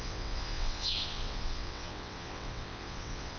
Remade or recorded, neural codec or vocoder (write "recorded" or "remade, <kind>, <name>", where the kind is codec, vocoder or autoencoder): remade, vocoder, WaveNeXt